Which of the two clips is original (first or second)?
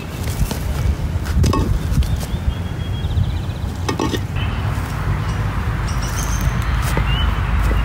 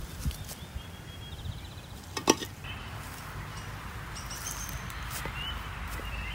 first